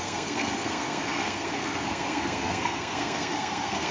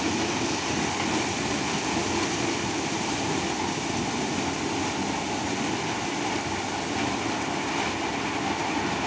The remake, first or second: first